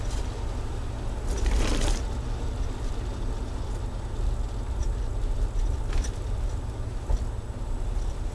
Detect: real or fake real